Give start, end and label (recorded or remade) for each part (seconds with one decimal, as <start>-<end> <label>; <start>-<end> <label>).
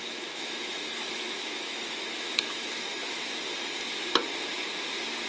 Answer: 0.0-3.2 remade; 3.2-5.3 recorded